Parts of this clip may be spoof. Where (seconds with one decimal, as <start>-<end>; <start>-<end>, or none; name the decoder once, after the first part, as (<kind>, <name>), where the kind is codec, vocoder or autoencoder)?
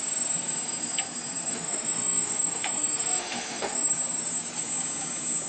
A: 1.5-3.9 (autoencoder, DAC-VAE)